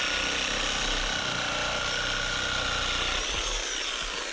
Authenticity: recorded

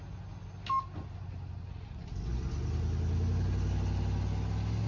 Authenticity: recorded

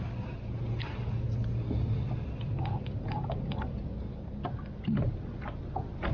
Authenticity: recorded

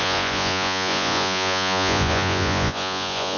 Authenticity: remade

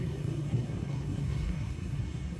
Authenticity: remade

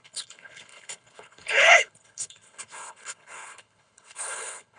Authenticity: remade